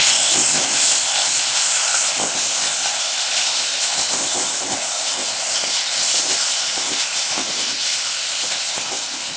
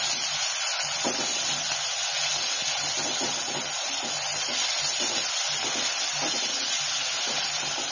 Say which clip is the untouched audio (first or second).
second